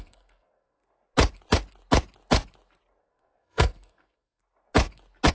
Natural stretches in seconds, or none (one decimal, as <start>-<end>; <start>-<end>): 0.8-3.0; 4.4-5.3